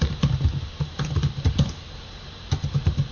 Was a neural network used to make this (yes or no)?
no